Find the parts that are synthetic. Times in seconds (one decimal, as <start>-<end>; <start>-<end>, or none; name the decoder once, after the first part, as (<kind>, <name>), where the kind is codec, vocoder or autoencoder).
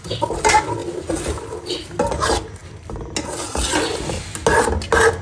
none